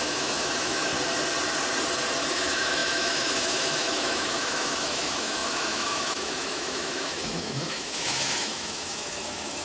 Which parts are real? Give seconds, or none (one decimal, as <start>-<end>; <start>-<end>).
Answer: 0.9-2.3